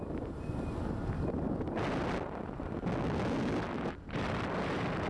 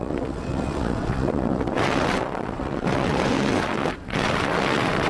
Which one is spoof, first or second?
second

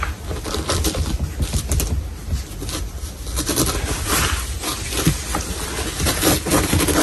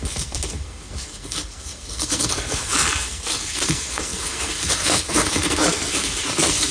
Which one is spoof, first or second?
second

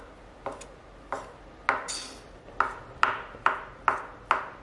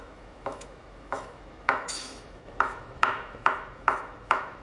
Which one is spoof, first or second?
second